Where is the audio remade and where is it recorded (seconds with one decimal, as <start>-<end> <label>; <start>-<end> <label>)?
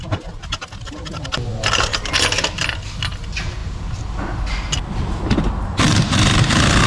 0.0-5.9 recorded; 5.9-6.4 remade; 6.4-6.9 recorded